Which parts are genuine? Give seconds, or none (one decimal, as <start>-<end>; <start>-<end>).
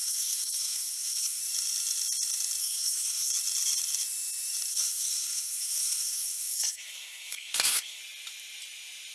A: 1.4-2.6; 3.3-4.7; 8.0-9.1